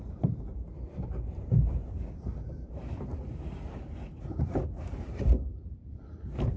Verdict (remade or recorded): remade